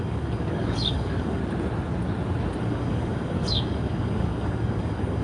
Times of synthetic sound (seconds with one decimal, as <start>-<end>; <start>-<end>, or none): 0.0-1.4; 2.6-5.2